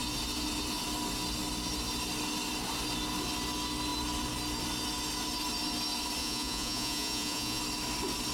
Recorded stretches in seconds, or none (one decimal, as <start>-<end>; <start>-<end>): 0.0-6.2; 7.6-8.3